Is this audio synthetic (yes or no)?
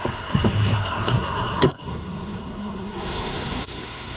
yes